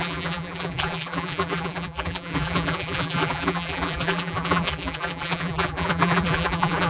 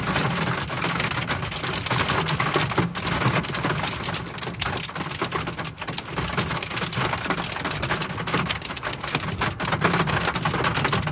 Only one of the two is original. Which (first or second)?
second